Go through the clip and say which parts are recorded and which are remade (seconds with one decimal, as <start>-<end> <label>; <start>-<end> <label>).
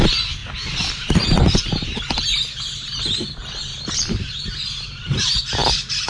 0.0-3.7 recorded; 3.7-5.4 remade; 5.4-6.1 recorded